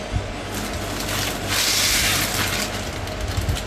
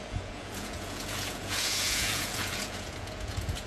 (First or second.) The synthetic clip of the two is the second